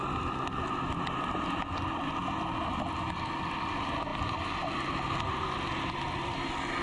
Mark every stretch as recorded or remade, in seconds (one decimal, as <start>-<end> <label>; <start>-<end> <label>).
0.0-6.8 recorded